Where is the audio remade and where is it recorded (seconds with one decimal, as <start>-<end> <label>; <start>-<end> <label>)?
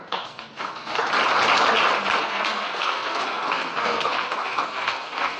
0.0-1.0 remade; 1.0-2.2 recorded; 2.2-5.4 remade